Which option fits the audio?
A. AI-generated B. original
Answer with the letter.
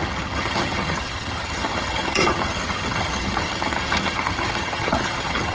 A